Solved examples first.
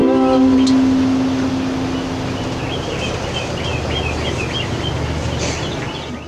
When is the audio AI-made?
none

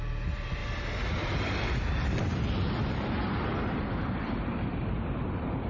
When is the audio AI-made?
0.0-0.6 (vocoder, BigVGAN v2); 1.1-5.7

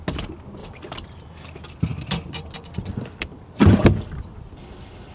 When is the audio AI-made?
0.6-1.5 (vocoder, BigVGAN v2); 1.9-5.1

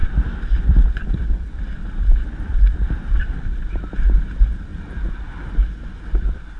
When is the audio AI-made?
0.0-4.7 (vocoder, BigVGAN v2); 5.8-6.6

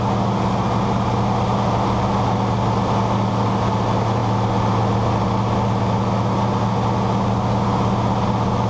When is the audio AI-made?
none

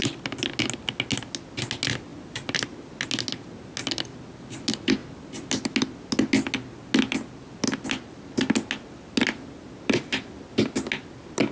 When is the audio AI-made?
2.1-2.8 (vocoder, BigVGAN v2)

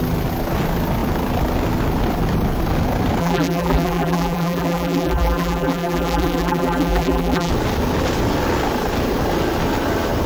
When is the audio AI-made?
3.2-7.5 (vocoder, BigVGAN v2)

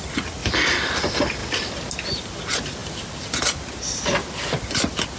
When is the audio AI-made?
0.4-1.0 (vocoder, BigVGAN v2); 1.4-1.9; 2.8-3.3